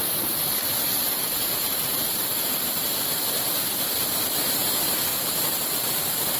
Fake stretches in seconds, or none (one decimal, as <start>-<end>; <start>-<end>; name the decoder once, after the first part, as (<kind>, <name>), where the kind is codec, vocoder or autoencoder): 0.0-1.0 (vocoder, BigVGAN v2); 4.5-5.1